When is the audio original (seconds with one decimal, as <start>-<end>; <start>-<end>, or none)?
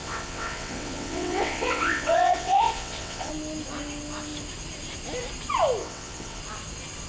3.3-5.8; 6.4-7.1